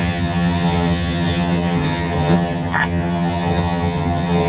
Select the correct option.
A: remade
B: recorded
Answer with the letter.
A